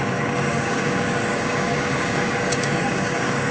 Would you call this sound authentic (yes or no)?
no